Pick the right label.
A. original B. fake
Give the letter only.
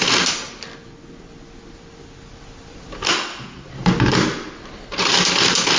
A